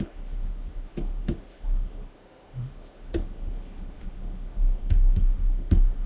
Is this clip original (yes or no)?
no